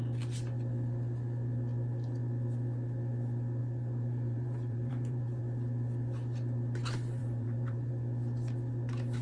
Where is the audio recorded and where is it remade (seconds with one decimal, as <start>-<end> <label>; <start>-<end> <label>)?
0.0-3.6 recorded; 3.6-5.4 remade; 5.4-7.2 recorded; 7.2-7.9 remade; 7.9-9.2 recorded